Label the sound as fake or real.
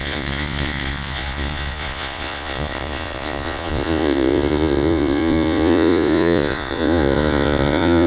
fake